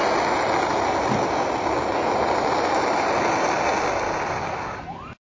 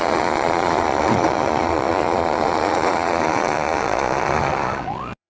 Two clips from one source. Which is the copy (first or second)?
second